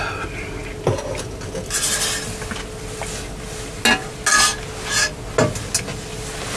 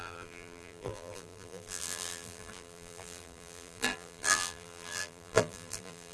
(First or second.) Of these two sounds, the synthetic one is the second